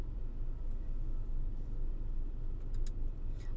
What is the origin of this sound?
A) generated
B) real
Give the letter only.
B